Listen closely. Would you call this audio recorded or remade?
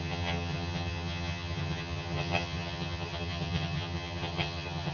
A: remade